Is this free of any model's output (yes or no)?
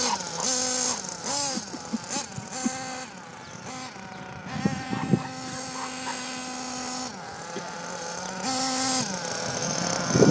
yes